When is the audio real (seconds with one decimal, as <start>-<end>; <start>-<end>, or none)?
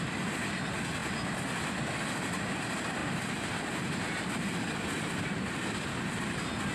0.0-3.0; 5.6-6.7